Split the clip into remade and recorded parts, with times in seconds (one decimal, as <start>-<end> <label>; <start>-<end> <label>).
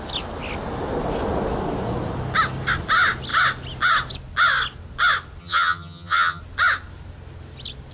0.0-5.4 recorded; 5.4-6.4 remade; 6.4-7.9 recorded